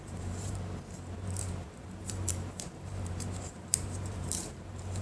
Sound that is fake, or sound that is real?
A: fake